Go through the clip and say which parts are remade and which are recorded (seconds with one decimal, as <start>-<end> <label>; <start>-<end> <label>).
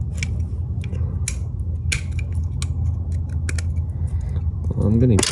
0.0-5.3 recorded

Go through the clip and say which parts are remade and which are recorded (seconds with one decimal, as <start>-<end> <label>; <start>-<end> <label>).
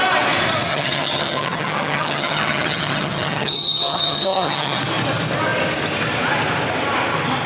0.0-0.7 recorded; 0.7-4.8 remade; 4.8-7.5 recorded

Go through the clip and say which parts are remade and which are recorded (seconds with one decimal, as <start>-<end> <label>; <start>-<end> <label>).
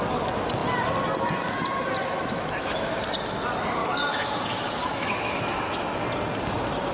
0.0-2.0 recorded; 2.0-2.9 remade; 2.9-3.8 recorded; 3.8-6.0 remade; 6.0-6.9 recorded